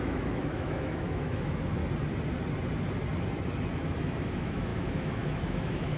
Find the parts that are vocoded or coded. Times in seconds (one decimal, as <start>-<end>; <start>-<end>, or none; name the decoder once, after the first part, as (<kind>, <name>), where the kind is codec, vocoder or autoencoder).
0.0-1.8 (autoencoder, DAC-VAE); 3.9-6.0

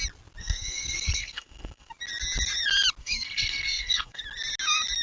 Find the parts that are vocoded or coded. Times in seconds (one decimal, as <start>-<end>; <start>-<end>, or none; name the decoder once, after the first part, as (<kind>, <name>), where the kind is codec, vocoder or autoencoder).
0.4-1.9 (codec, SNAC); 3.0-4.2

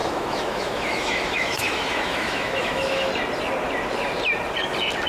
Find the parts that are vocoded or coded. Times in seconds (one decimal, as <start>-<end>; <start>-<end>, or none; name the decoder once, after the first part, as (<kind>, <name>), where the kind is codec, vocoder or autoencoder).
0.0-3.1 (autoencoder, DAC-VAE)

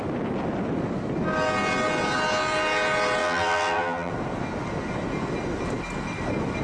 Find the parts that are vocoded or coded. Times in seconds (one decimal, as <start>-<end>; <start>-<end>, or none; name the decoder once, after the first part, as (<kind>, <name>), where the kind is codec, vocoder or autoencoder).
3.2-4.1 (vocoder, BigVGAN v2)

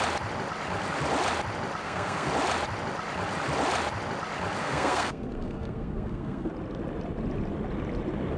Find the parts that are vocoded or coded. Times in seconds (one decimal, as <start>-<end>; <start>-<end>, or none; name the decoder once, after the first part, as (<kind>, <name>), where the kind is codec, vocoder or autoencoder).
1.8-2.3 (codec, SNAC); 4.6-6.5

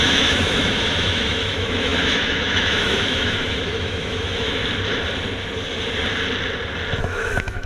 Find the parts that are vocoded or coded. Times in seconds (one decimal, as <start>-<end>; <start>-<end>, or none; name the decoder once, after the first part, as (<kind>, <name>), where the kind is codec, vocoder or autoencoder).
0.0-4.6 (autoencoder, DAC-VAE); 7.0-7.7